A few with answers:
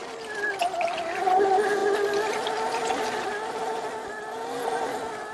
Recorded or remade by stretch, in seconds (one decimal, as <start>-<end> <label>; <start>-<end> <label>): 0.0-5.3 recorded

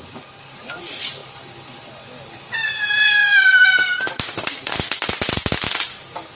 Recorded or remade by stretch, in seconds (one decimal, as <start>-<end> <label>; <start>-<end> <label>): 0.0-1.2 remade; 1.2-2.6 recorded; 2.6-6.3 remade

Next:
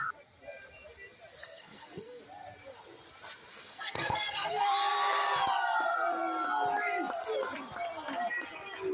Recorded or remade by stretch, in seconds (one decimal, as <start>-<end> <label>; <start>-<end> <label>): 0.0-1.4 recorded; 1.4-2.2 remade; 2.2-3.5 recorded; 3.5-4.7 remade; 4.7-8.9 recorded

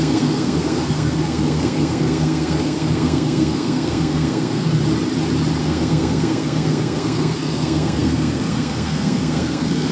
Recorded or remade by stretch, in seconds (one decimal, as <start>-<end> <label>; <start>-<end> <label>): 0.0-4.8 remade; 4.8-5.6 recorded; 5.6-9.9 remade